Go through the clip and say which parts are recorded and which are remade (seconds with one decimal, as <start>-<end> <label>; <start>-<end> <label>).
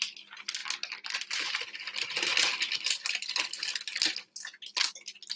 0.0-5.4 recorded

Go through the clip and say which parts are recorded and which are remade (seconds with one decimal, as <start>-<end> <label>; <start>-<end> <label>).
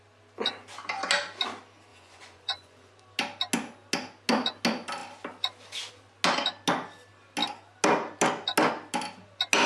0.0-1.9 recorded; 1.9-2.9 remade; 2.9-9.7 recorded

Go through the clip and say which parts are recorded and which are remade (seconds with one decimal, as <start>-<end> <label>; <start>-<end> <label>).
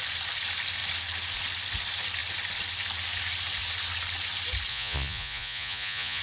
0.0-4.7 recorded; 4.7-6.2 remade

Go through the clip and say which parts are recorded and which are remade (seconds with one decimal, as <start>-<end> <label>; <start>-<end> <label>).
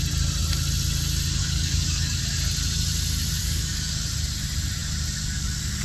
0.0-1.4 recorded; 1.4-2.2 remade; 2.2-3.4 recorded; 3.4-3.9 remade; 3.9-5.8 recorded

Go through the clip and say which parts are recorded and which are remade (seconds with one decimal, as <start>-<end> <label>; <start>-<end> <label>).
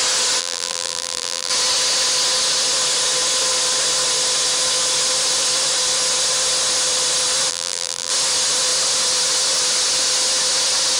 0.0-0.4 recorded; 0.4-1.5 remade; 1.5-7.5 recorded; 7.5-8.1 remade; 8.1-11.0 recorded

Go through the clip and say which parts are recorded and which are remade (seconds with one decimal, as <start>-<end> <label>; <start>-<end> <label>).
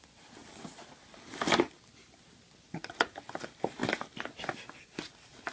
0.0-5.5 recorded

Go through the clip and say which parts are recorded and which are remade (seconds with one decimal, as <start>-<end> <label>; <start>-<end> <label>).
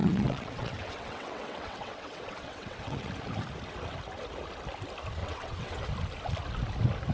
0.0-3.1 remade; 3.1-5.2 recorded; 5.2-5.8 remade; 5.8-7.1 recorded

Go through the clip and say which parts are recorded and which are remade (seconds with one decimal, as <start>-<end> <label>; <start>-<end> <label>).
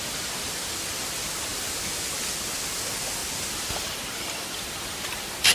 0.0-3.2 recorded; 3.2-5.1 remade; 5.1-5.5 recorded